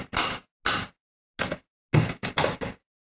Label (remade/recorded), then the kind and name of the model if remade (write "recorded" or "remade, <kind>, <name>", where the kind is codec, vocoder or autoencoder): recorded